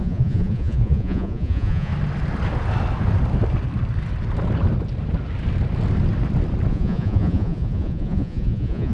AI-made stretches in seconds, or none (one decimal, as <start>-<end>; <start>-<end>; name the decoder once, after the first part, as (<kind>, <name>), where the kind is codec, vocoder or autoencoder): 0.0-1.9 (vocoder, Vocos); 6.7-8.9